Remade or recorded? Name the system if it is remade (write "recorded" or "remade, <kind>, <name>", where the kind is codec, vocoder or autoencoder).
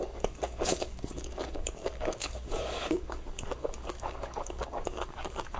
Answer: remade, codec, DAC